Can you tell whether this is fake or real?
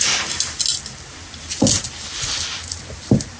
real